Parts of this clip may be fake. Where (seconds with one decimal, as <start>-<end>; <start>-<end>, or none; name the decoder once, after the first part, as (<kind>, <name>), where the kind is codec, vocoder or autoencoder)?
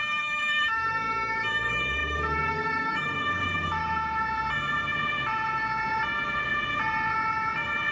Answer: 0.0-3.8 (autoencoder, DAC-VAE)